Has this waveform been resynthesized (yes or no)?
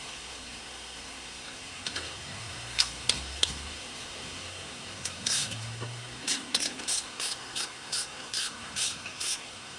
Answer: yes